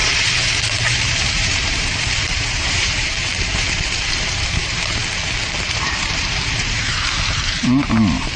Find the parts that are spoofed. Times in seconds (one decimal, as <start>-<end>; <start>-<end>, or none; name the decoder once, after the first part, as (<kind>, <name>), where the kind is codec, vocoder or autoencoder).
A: 0.0-5.0 (vocoder, BigVGAN v2); 5.6-8.4